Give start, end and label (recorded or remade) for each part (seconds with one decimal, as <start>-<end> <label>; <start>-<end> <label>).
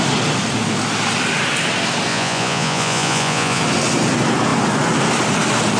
0.0-2.1 recorded; 2.1-3.6 remade; 3.6-5.8 recorded